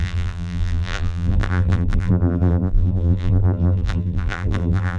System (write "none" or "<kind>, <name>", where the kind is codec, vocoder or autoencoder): vocoder, BigVGAN v2